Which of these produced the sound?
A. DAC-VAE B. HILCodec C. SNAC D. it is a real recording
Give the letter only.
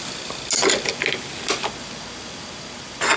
D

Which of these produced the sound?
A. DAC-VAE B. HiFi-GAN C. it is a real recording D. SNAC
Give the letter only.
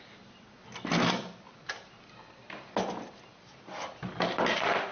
C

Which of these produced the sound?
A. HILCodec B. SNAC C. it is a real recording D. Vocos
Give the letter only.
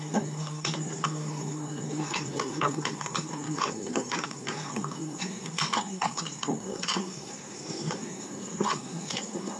B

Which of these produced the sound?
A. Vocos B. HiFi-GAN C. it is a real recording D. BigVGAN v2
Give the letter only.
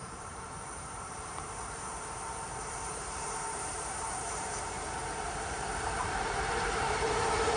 D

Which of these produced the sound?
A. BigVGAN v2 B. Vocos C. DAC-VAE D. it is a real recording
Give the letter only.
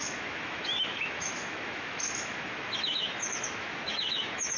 C